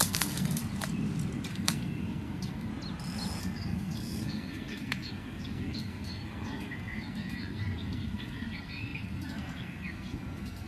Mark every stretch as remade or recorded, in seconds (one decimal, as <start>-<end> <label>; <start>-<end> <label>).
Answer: 0.0-0.6 remade; 0.6-1.5 recorded; 1.5-2.7 remade; 2.7-3.4 recorded; 3.4-10.7 remade